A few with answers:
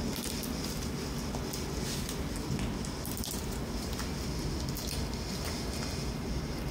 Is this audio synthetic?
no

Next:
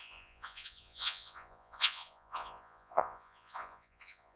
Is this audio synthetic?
yes